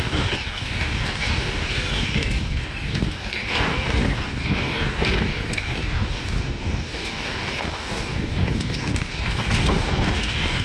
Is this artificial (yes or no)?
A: yes